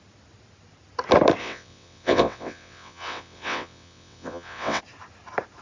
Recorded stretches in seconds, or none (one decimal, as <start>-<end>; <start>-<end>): 0.0-1.4; 4.8-5.6